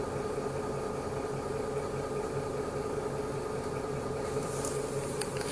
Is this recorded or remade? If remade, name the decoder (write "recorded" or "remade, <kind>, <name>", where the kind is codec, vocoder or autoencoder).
recorded